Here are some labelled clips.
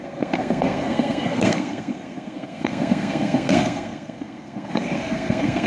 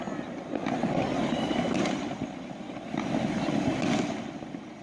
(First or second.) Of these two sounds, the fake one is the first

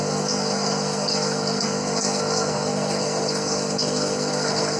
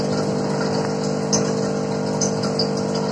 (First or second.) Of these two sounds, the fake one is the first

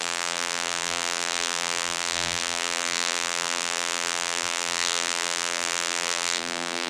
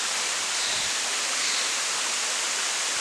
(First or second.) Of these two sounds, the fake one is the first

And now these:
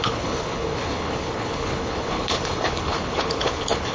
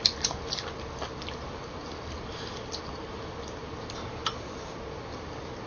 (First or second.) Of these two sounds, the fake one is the first